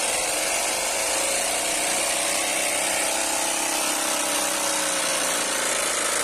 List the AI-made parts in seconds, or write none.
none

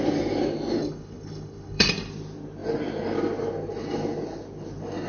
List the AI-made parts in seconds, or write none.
0.8-1.9 (codec, HILCodec)

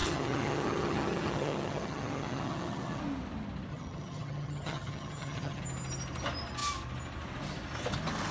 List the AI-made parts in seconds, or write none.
0.0-3.0 (vocoder, HiFi-GAN); 3.7-5.6